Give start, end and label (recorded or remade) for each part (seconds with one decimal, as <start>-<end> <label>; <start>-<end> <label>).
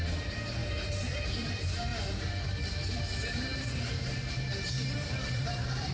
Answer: 0.0-0.6 remade; 0.6-1.3 recorded; 1.3-1.9 remade; 1.9-2.5 recorded; 2.5-5.9 remade